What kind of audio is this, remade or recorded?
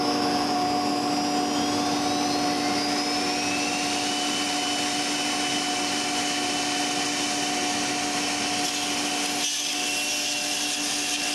recorded